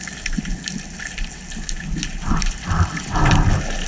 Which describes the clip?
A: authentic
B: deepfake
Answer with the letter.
A